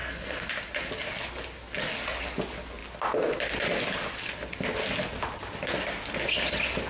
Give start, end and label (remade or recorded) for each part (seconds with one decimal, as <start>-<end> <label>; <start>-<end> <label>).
0.0-0.5 remade; 0.5-6.9 recorded